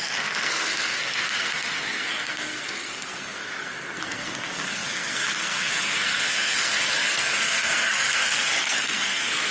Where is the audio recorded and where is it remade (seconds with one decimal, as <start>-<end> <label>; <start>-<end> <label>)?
0.0-9.5 remade